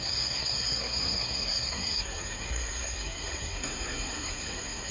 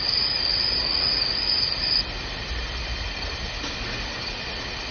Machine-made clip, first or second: first